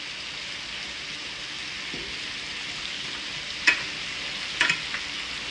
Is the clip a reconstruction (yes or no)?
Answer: no